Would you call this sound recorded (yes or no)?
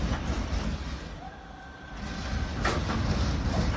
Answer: yes